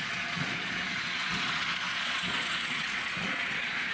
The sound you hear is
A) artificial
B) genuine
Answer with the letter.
A